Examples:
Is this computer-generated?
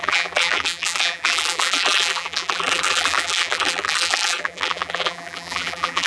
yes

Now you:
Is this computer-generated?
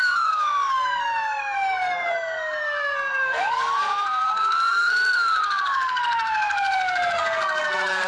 yes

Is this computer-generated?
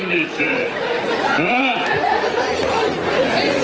yes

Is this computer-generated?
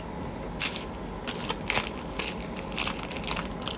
no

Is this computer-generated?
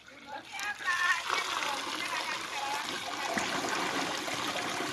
no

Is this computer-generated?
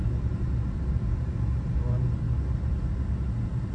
no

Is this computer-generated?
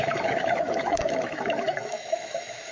yes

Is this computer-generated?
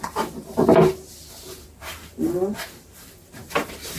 yes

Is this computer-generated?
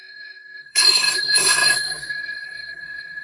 yes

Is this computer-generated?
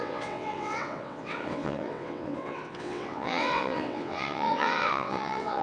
yes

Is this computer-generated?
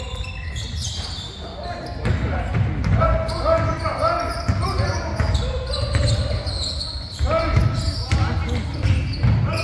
no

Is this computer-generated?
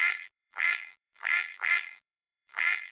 yes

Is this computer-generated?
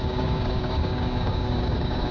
yes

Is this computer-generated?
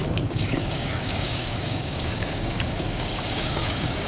yes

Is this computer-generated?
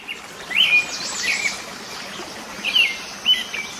no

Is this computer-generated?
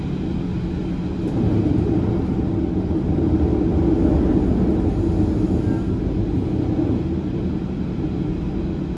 no